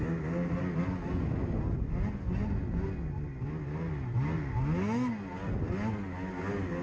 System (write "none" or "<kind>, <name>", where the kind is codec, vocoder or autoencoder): none